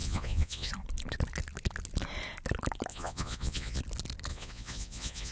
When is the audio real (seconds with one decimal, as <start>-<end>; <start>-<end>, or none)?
0.7-2.9; 3.8-4.3